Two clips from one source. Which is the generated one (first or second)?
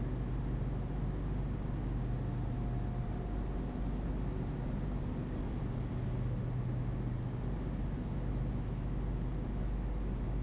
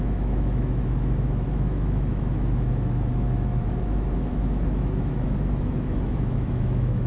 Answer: second